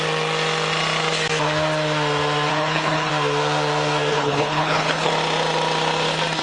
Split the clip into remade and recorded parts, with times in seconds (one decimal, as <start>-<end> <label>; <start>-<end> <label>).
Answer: 0.0-2.5 recorded; 2.5-3.1 remade; 3.1-4.1 recorded; 4.1-5.1 remade; 5.1-6.4 recorded